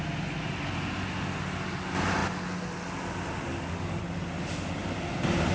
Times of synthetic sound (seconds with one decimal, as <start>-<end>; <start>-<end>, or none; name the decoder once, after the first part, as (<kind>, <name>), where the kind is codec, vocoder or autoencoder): 3.5-4.0 (codec, DAC)